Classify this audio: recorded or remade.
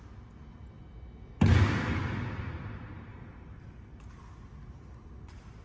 recorded